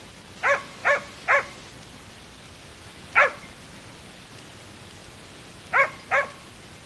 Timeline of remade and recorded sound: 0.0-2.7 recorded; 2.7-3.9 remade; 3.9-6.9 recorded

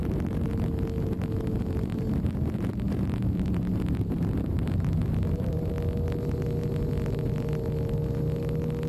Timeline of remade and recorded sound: 0.0-0.5 remade; 0.5-1.9 recorded; 1.9-5.7 remade; 5.7-8.9 recorded

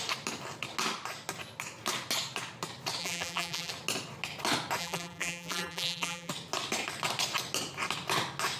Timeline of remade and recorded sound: 0.0-3.0 recorded; 3.0-3.7 remade; 3.7-4.8 recorded; 4.8-6.3 remade; 6.3-8.6 recorded

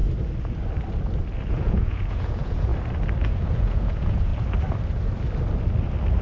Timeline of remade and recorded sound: 0.0-1.5 recorded; 1.5-2.7 remade; 2.7-3.3 recorded; 3.3-4.3 remade; 4.3-6.2 recorded

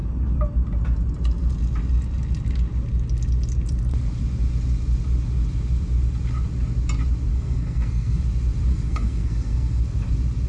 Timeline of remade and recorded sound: 0.0-7.3 recorded; 7.3-8.2 remade; 8.2-8.7 recorded; 8.7-9.8 remade; 9.8-10.5 recorded

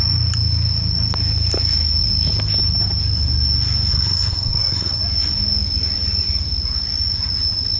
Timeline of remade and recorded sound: 0.0-3.9 recorded; 3.9-5.0 remade; 5.0-7.8 recorded